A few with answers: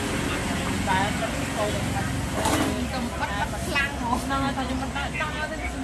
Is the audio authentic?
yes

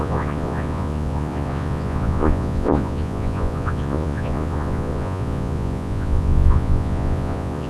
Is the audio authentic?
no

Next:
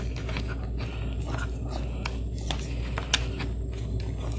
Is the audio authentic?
yes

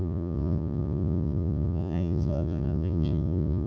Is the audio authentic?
no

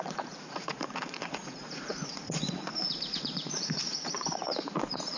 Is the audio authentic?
no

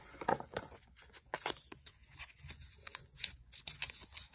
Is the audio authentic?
no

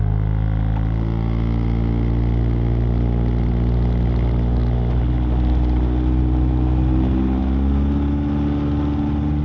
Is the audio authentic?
yes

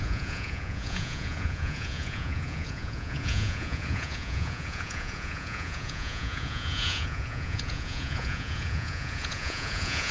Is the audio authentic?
no